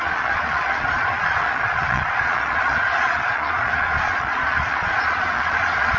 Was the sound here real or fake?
fake